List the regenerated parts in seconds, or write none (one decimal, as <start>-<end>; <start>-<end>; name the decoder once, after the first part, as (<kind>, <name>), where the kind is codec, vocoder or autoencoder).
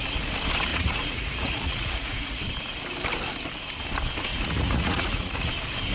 0.7-2.4 (vocoder, Vocos); 4.3-5.5